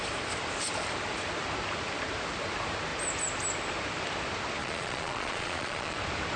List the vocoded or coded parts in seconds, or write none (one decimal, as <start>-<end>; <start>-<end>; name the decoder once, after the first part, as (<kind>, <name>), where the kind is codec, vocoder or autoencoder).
4.6-6.0 (vocoder, Vocos)